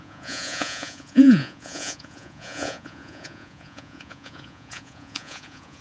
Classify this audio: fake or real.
fake